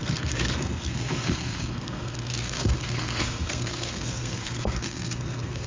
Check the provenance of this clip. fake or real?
fake